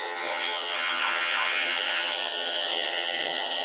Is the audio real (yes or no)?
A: no